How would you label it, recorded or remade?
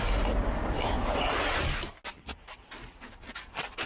recorded